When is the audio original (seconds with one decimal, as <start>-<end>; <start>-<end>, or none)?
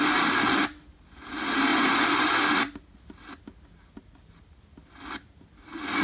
0.0-1.7; 2.2-6.0